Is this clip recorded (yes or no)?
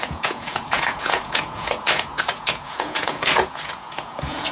no